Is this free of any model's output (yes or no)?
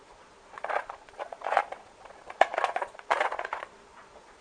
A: no